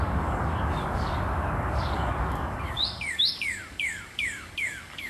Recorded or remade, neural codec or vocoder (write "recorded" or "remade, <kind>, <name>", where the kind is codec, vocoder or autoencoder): remade, codec, DAC